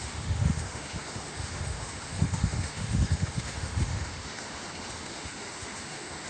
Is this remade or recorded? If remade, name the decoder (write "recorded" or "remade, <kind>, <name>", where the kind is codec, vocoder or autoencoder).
remade, autoencoder, DAC-VAE